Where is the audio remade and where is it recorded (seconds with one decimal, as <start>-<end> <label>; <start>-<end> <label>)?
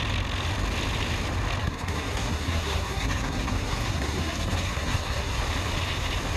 0.0-1.6 recorded; 1.6-5.4 remade; 5.4-6.4 recorded